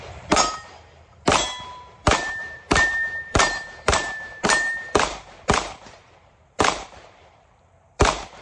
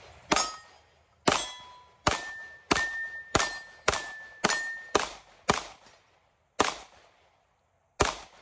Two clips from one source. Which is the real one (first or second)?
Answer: second